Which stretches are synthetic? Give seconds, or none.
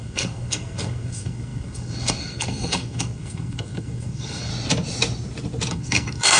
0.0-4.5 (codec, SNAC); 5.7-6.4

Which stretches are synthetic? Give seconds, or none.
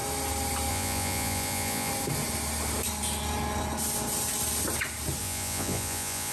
0.7-1.9 (vocoder, Vocos); 5.2-6.3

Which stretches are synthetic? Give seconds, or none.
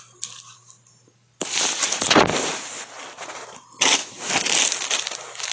none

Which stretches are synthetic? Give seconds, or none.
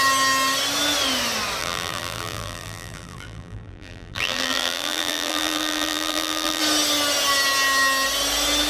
1.6-6.6 (vocoder, BigVGAN v2)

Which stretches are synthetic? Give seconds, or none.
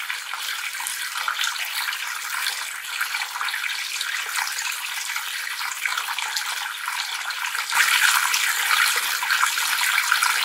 none